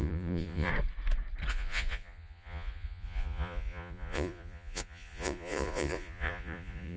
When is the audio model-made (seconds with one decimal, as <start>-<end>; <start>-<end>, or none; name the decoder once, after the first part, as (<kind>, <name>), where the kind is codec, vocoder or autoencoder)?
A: 0.0-0.7 (vocoder, Vocos); 1.5-7.0